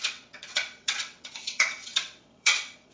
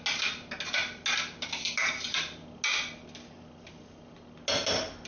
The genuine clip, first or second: second